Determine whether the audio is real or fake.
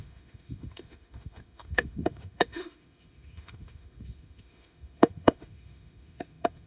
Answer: fake